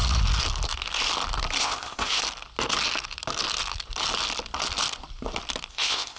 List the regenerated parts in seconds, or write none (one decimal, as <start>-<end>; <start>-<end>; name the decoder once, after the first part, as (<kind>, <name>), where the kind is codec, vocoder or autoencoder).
1.6-2.2 (codec, ZipCodec); 5.7-6.2